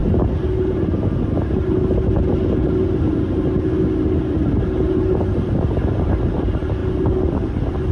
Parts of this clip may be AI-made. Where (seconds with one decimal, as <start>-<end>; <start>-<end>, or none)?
none